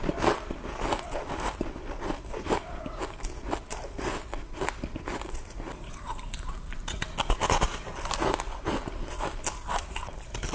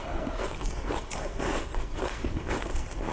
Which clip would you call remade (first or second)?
second